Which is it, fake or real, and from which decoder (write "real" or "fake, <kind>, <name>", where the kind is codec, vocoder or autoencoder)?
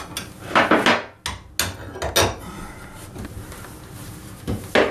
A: real